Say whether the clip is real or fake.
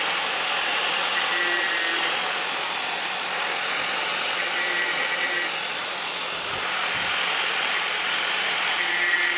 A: real